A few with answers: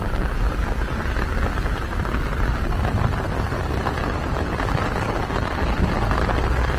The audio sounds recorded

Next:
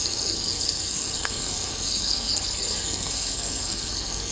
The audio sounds remade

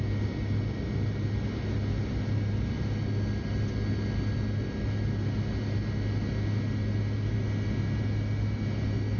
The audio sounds recorded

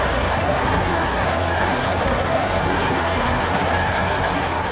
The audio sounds remade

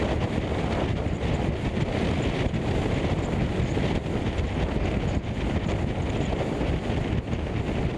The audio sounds recorded